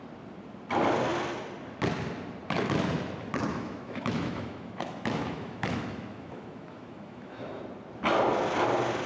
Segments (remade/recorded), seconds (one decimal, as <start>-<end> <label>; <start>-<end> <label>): 0.0-3.5 recorded; 3.5-7.6 remade; 7.6-9.1 recorded